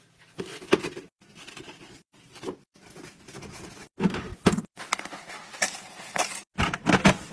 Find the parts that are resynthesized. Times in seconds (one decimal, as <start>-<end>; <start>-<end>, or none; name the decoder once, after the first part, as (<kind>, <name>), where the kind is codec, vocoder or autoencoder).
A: none